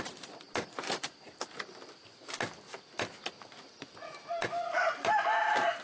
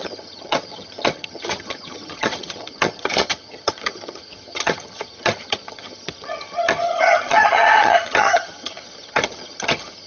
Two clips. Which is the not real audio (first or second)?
second